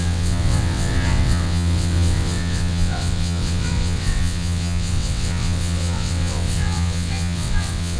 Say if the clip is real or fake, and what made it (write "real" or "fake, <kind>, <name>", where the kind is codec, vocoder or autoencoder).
fake, vocoder, WaveNeXt